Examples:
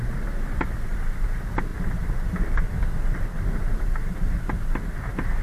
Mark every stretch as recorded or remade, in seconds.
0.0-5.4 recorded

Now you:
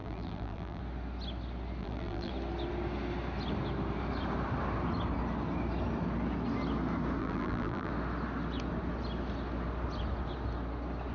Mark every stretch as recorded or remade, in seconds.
0.0-0.8 remade; 0.8-1.8 recorded; 1.8-2.3 remade; 2.3-7.2 recorded; 7.2-7.9 remade; 7.9-11.1 recorded